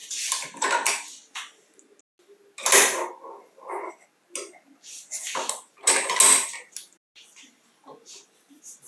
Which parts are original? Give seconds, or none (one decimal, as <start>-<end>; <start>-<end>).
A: 0.0-8.9